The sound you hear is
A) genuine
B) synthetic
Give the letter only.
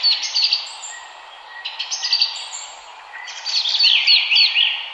A